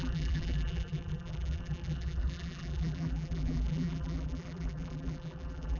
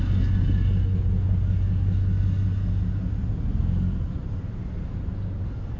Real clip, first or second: second